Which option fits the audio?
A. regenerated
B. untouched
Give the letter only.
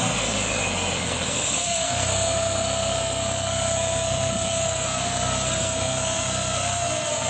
A